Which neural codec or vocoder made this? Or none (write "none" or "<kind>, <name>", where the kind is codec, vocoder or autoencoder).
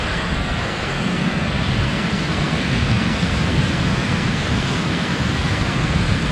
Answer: codec, SNAC